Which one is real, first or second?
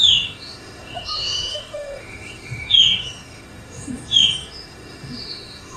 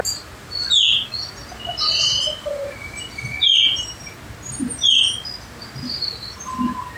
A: second